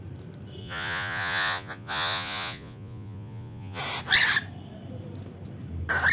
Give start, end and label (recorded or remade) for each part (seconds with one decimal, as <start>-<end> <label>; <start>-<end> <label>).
0.0-0.6 recorded; 0.6-3.8 remade; 3.8-6.1 recorded